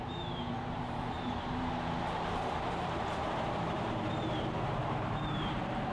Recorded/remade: remade